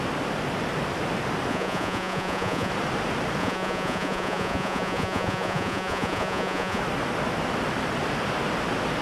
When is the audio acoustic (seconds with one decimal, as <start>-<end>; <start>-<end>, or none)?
0.0-1.5; 2.7-3.4; 6.8-9.0